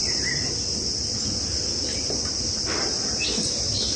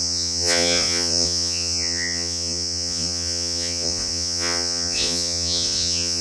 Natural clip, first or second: first